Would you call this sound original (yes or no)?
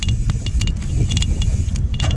yes